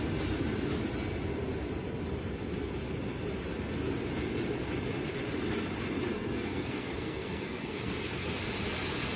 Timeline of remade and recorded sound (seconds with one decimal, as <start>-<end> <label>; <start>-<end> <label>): 0.0-6.1 recorded; 6.1-8.1 remade; 8.1-9.2 recorded